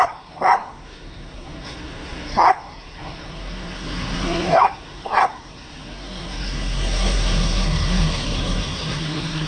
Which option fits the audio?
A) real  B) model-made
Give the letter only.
B